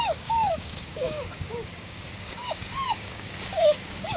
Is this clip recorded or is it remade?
remade